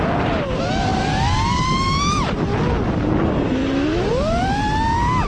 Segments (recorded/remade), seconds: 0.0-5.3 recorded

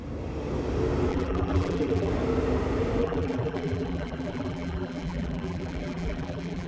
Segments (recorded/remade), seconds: 0.0-1.1 recorded; 1.1-2.1 remade; 2.1-3.0 recorded; 3.0-6.7 remade

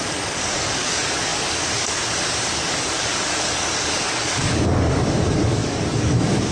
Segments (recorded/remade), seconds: 0.0-6.5 remade

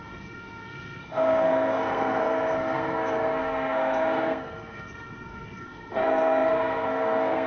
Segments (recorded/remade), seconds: 0.0-7.5 remade

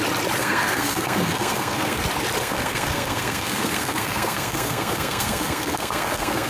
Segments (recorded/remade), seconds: 0.0-0.4 recorded; 0.4-2.0 remade; 2.0-2.4 recorded; 2.4-6.5 remade

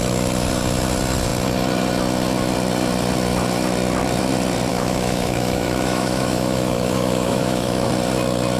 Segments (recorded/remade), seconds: 0.0-4.7 recorded; 4.7-7.9 remade; 7.9-8.6 recorded

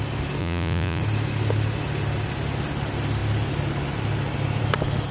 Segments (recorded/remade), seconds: 0.0-0.4 recorded; 0.4-1.0 remade; 1.0-5.1 recorded